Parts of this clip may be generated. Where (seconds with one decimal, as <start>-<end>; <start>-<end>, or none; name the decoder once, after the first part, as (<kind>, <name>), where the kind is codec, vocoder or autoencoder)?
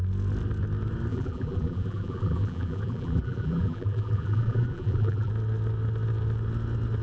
1.1-5.3 (vocoder, BigVGAN v2)